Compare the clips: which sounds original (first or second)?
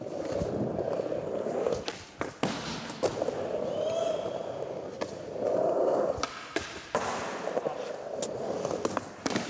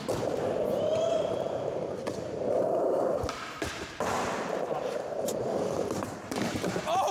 first